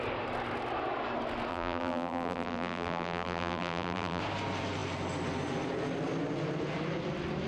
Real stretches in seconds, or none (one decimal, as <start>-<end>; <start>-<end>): 0.0-1.5; 4.2-7.5